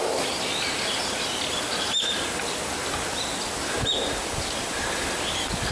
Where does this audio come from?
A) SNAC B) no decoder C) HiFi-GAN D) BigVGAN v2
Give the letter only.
B